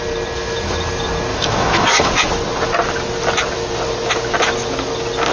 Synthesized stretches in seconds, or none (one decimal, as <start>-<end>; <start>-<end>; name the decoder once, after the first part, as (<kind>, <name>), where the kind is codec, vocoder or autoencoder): 1.3-2.1 (autoencoder, DAC-VAE)